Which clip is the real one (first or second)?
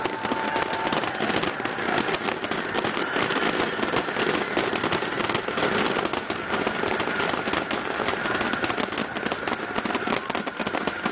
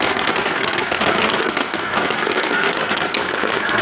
first